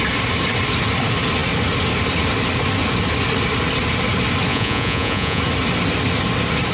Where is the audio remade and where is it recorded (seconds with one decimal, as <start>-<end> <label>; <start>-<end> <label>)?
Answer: 0.0-4.5 recorded; 4.5-5.4 remade; 5.4-6.7 recorded